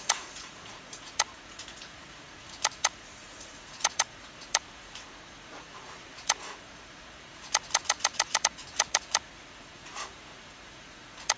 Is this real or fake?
fake